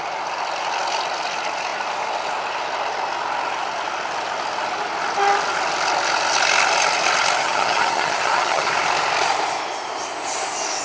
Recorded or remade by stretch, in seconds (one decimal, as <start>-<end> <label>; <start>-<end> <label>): 0.0-7.4 recorded; 7.4-8.7 remade; 8.7-10.8 recorded